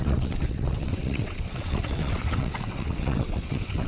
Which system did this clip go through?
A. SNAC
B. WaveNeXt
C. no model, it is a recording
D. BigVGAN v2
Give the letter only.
B